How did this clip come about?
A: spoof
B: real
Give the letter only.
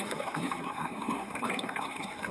A